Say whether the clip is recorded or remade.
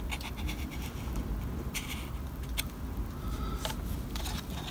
recorded